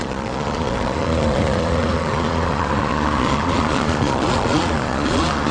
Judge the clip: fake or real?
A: fake